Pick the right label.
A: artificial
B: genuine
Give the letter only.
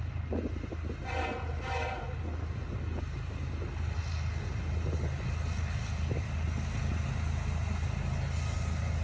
B